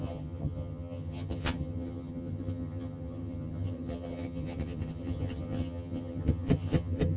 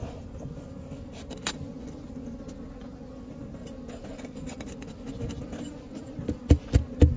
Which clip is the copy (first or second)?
first